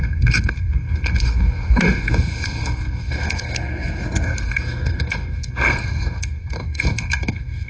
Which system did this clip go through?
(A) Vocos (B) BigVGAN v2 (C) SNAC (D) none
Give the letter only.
C